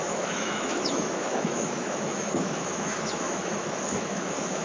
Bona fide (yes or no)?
no